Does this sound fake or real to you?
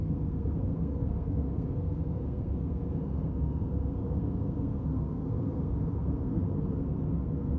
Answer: fake